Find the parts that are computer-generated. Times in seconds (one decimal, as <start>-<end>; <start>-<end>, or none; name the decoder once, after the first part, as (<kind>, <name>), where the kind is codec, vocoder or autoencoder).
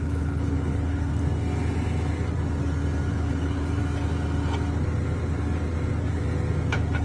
0.0-1.1 (codec, HILCodec); 3.1-3.8